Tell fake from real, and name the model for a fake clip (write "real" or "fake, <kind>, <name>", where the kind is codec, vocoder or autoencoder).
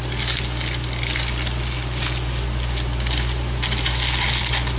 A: real